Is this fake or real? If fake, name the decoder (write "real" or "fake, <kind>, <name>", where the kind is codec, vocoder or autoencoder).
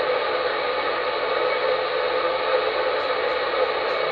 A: real